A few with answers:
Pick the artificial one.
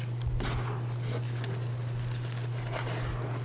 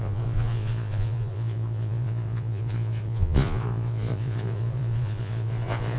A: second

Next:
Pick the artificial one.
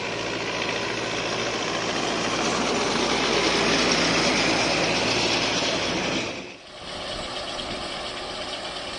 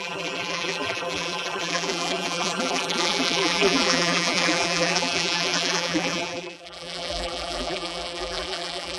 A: second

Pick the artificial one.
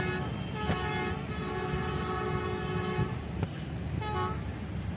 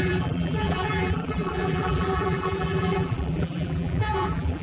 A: second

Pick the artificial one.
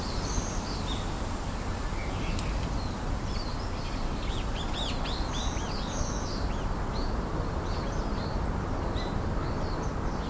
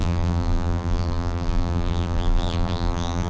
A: second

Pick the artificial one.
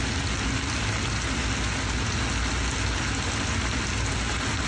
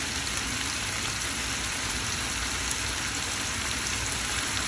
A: second